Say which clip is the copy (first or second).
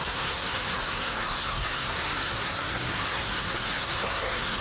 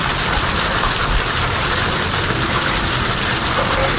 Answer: first